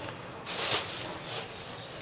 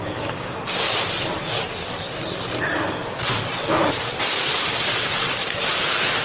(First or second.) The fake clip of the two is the second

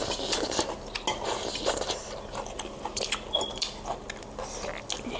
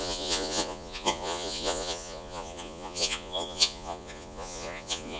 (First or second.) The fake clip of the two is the second